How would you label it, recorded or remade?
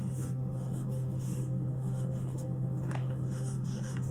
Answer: remade